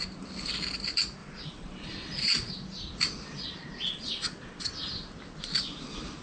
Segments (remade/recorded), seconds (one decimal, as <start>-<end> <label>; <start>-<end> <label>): 0.0-1.2 recorded; 1.2-2.5 remade; 2.5-3.9 recorded; 3.9-4.7 remade; 4.7-6.2 recorded